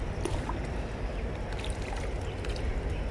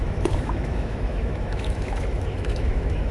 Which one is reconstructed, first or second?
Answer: second